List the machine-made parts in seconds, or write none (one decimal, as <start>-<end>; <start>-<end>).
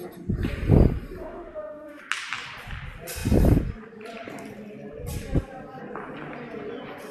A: 1.2-2.0